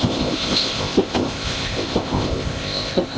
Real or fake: fake